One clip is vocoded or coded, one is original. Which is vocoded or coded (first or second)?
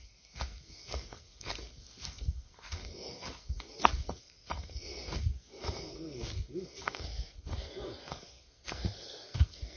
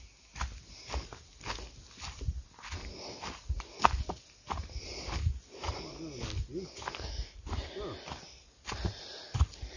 first